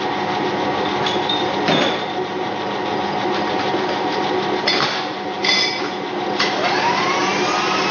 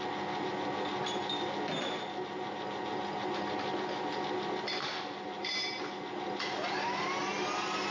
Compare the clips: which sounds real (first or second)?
second